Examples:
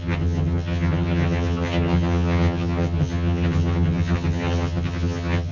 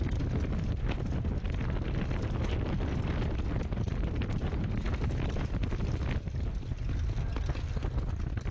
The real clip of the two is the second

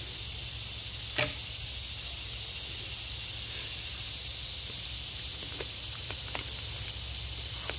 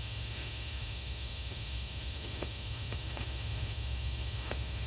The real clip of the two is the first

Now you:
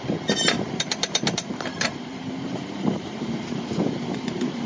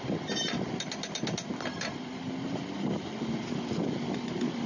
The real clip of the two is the second